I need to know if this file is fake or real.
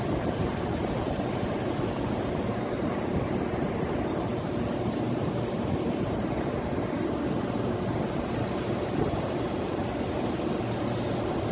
real